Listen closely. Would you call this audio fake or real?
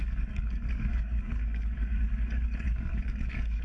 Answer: fake